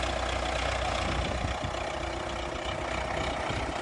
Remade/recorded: recorded